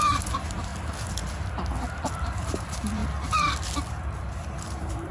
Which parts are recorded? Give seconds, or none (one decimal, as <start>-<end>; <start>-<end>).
0.7-2.2; 3.0-4.2

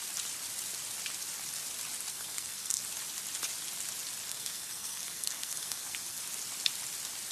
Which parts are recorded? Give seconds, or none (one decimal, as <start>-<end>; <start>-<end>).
0.0-2.1; 2.8-4.3; 6.2-7.3

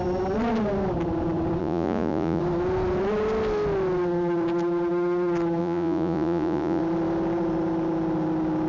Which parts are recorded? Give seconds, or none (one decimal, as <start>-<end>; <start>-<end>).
0.0-1.6; 2.4-5.6; 6.8-8.7

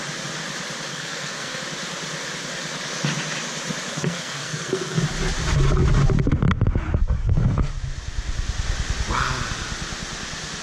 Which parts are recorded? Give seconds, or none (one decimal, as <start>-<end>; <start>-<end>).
0.0-0.9; 1.6-3.9; 5.0-7.2; 7.7-10.6

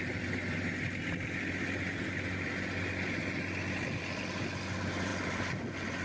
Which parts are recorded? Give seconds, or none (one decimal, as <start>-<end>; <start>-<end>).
0.0-6.0